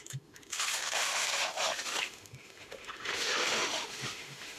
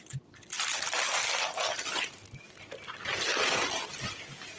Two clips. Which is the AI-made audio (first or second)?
first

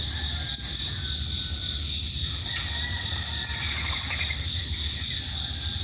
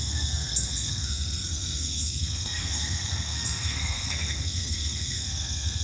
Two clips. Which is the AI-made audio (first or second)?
second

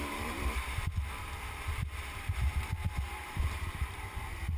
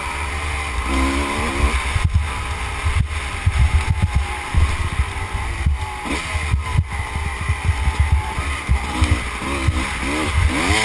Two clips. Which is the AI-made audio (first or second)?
first